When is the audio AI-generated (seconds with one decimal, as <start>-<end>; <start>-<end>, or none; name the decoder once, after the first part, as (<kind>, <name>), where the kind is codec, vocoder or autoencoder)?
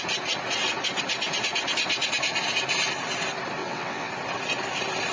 3.6-4.1 (vocoder, WaveNeXt)